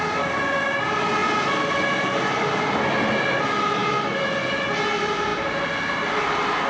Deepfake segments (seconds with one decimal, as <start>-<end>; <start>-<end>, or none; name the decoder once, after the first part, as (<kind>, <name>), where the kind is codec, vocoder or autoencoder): none